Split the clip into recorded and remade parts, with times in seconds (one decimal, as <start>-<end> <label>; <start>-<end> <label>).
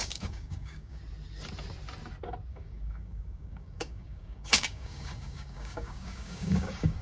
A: 0.0-1.0 remade; 1.0-2.5 recorded; 2.5-7.0 remade